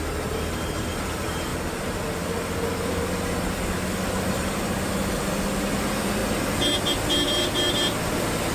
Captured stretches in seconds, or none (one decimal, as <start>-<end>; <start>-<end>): 0.0-8.5